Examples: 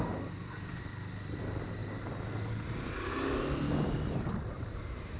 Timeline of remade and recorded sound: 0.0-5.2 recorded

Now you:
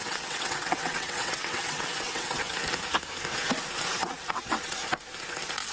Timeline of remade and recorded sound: 0.0-2.5 remade; 2.5-4.0 recorded; 4.0-4.8 remade; 4.8-5.7 recorded

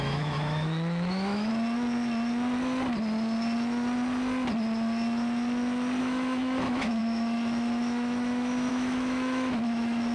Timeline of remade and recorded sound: 0.0-1.5 remade; 1.5-6.0 recorded; 6.0-10.1 remade

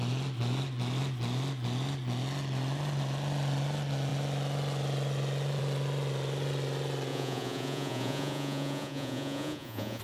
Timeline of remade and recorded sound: 0.0-7.1 recorded; 7.1-10.0 remade